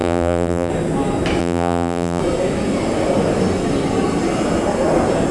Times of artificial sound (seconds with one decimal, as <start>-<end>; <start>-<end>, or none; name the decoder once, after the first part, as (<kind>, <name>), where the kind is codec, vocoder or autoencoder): 0.0-0.7 (vocoder, BigVGAN v2); 1.4-2.2